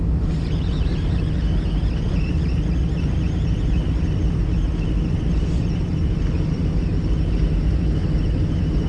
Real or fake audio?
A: real